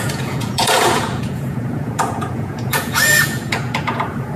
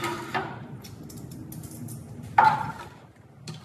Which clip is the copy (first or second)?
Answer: first